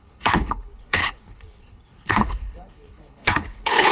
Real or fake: fake